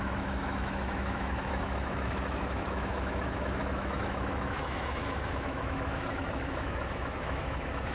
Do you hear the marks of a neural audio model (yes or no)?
yes